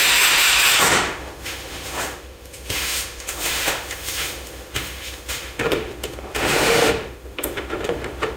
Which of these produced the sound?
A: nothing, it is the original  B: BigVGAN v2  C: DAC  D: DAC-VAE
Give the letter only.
D